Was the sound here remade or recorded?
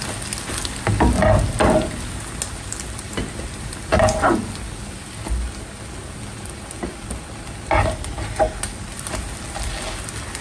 recorded